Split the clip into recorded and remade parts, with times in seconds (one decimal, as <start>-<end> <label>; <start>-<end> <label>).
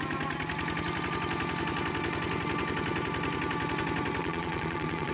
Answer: 0.0-4.2 recorded; 4.2-5.1 remade